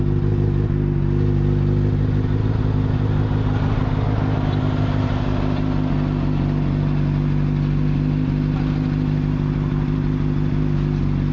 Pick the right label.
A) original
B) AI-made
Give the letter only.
A